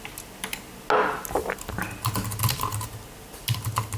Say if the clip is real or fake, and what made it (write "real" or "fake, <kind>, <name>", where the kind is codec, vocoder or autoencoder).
real